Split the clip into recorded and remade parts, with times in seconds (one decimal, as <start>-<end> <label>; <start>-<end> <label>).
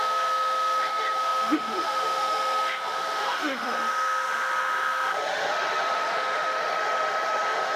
0.0-7.8 remade